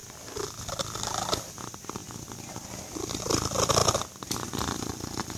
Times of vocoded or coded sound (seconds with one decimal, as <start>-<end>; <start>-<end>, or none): 1.0-3.8; 4.4-5.4